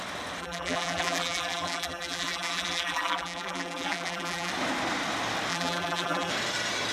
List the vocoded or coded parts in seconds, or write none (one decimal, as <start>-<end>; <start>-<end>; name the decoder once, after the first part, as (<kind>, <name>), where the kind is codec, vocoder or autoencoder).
0.4-4.5 (vocoder, BigVGAN v2); 5.5-6.3